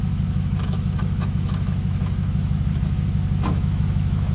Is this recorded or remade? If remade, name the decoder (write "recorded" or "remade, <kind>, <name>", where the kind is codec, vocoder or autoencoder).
remade, autoencoder, DAC-VAE